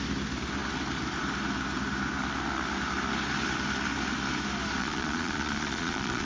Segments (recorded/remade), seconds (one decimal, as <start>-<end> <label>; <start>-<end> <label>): 0.0-4.8 recorded; 4.8-6.3 remade